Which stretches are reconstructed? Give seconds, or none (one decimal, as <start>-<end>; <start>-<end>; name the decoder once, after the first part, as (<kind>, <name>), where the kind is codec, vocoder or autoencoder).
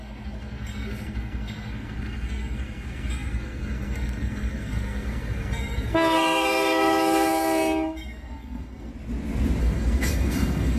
0.0-8.9 (codec, SNAC); 9.6-10.8